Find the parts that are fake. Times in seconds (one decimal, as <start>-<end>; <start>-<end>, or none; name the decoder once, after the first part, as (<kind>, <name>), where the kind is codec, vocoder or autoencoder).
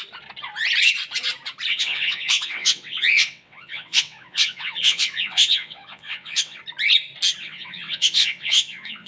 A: 1.7-6.6 (vocoder, WaveNeXt); 7.4-9.1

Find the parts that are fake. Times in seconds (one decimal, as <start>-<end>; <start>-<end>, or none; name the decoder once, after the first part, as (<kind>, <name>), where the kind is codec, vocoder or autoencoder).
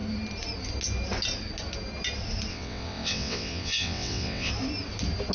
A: 2.5-4.5 (vocoder, WaveNeXt)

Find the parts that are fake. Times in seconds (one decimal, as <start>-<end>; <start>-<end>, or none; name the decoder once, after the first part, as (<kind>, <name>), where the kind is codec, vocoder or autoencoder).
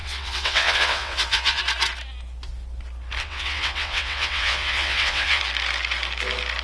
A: 0.0-1.6 (vocoder, WaveNeXt); 3.2-5.4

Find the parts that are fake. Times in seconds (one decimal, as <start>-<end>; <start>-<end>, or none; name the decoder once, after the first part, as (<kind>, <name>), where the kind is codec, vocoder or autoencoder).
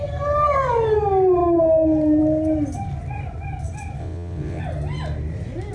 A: 4.0-4.6 (vocoder, WaveNeXt)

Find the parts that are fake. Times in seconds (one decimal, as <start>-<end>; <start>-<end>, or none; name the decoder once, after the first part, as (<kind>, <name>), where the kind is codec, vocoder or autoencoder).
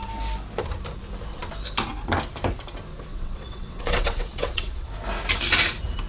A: 3.1-4.9 (vocoder, WaveNeXt)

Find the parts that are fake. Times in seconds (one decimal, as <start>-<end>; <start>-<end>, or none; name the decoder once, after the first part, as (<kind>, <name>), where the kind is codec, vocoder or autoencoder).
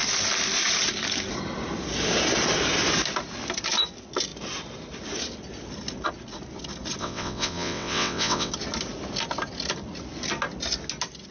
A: 7.0-8.5 (vocoder, WaveNeXt)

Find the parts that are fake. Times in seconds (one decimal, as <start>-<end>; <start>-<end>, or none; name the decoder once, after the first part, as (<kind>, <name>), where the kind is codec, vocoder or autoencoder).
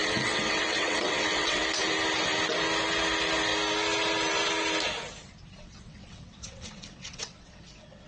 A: 0.0-1.6 (vocoder, WaveNeXt); 5.6-8.1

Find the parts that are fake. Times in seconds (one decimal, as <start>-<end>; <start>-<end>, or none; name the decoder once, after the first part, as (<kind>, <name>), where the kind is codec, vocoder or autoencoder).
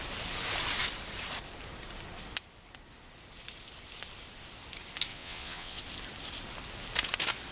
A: 5.1-5.8 (vocoder, WaveNeXt)